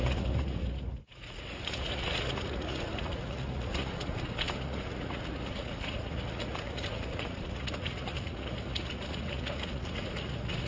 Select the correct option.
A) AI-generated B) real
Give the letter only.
A